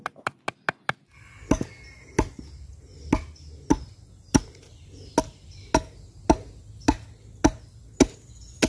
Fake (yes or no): no